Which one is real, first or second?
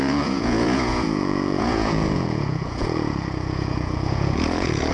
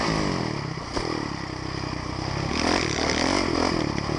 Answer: second